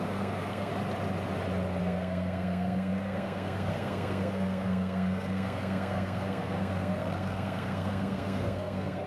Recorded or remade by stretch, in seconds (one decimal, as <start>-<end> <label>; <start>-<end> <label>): 0.0-0.7 remade; 0.7-1.8 recorded; 1.8-9.1 remade